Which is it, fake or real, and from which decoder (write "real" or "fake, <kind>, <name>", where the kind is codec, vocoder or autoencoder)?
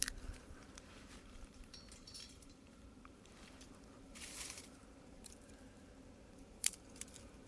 fake, vocoder, BigVGAN v2